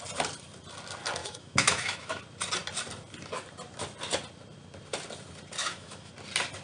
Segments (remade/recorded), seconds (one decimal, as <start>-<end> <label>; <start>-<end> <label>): 0.0-1.2 recorded; 1.2-2.2 remade; 2.2-5.6 recorded; 5.6-6.1 remade; 6.1-6.6 recorded